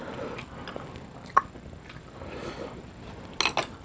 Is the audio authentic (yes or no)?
yes